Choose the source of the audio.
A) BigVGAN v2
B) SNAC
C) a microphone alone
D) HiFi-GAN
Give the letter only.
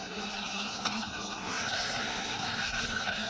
B